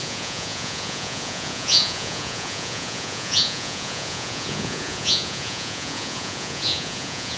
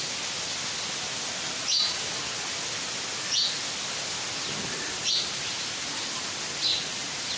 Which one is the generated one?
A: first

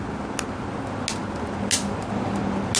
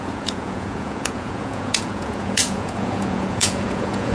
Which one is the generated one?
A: second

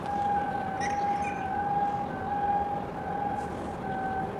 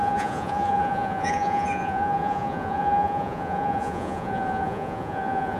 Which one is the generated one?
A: second